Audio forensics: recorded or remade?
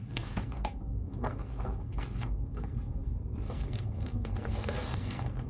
remade